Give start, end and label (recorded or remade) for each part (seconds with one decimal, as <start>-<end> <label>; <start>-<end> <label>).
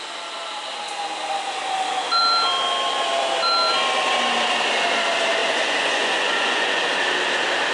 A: 0.0-5.4 recorded; 5.4-6.8 remade; 6.8-7.7 recorded